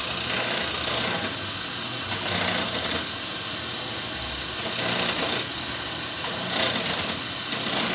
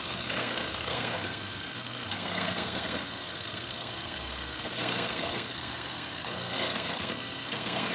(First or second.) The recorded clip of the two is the first